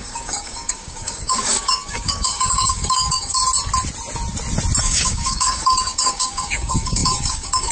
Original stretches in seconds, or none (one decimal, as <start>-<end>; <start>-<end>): 3.4-4.8